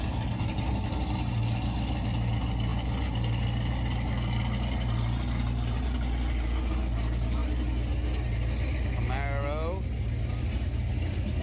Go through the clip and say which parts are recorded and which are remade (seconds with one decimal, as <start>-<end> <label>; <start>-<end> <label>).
0.0-11.4 recorded